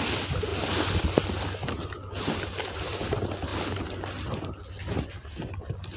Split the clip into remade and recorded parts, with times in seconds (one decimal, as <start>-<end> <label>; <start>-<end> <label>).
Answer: 0.0-6.0 recorded